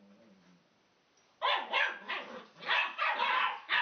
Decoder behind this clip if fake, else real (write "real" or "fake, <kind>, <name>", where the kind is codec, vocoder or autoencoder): real